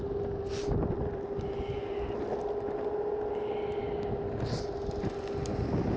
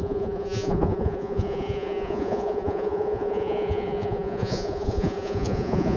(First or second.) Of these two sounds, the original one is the first